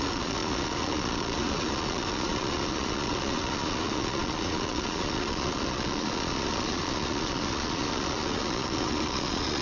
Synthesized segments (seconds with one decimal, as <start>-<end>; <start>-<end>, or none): 0.0-9.6